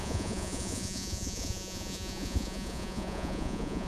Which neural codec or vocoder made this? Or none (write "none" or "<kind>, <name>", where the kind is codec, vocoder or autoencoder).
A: vocoder, Vocos